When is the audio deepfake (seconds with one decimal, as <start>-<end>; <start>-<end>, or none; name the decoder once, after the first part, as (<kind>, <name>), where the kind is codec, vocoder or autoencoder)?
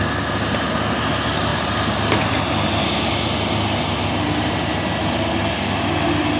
none